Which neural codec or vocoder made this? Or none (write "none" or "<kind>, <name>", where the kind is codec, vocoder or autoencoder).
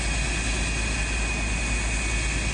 none